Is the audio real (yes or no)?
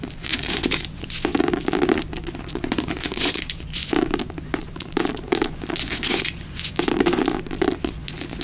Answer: no